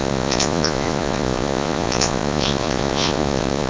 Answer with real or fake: fake